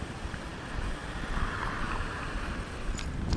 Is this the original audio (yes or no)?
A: yes